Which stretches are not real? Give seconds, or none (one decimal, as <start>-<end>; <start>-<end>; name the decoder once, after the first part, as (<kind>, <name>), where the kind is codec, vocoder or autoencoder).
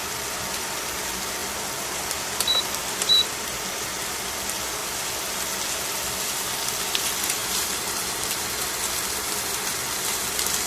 1.4-4.3 (vocoder, BigVGAN v2); 4.8-5.6; 7.4-8.3